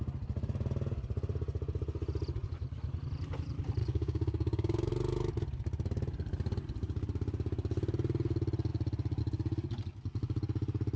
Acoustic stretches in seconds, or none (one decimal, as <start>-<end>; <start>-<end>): 0.0-3.8; 4.9-11.0